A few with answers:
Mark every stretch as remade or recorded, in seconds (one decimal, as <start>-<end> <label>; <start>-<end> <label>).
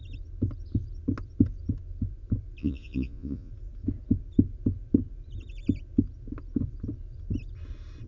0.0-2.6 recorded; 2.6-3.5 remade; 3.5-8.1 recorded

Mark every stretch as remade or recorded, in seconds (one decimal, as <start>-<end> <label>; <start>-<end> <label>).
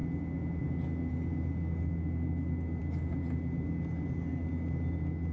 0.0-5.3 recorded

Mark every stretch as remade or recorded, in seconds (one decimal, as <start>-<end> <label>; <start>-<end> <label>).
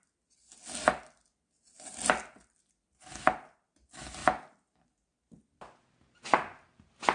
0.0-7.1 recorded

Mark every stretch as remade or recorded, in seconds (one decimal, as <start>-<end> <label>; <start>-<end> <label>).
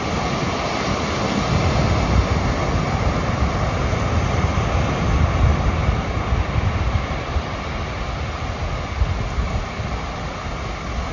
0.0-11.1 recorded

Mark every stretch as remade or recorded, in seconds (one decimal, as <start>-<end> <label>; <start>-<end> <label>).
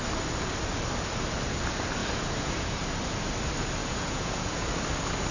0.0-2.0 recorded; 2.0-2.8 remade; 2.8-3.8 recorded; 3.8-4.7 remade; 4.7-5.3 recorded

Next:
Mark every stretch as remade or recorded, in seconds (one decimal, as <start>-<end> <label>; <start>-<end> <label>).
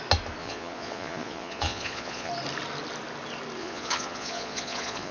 0.0-0.4 recorded; 0.4-2.3 remade; 2.3-3.6 recorded; 3.6-5.1 remade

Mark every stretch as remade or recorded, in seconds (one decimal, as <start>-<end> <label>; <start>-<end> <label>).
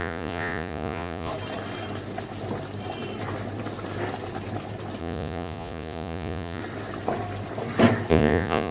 0.0-1.3 remade; 1.3-5.0 recorded; 5.0-6.6 remade; 6.6-8.1 recorded; 8.1-8.7 remade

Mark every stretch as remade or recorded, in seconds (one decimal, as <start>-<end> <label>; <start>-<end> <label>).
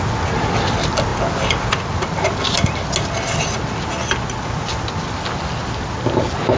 0.0-6.6 recorded